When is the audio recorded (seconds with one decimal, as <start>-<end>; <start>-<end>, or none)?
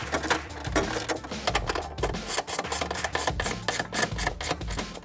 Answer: 0.0-5.0